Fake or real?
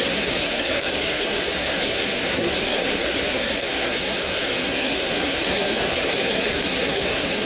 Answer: fake